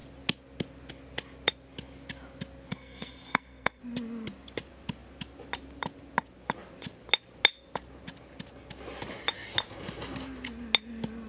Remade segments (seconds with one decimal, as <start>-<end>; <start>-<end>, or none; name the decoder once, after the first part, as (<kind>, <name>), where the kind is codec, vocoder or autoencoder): 2.7-3.8 (codec, SNAC)